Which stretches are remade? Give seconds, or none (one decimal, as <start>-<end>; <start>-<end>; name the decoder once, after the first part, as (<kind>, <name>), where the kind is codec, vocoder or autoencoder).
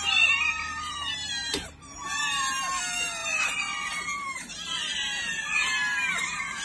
1.4-2.8 (vocoder, BigVGAN v2); 3.2-5.2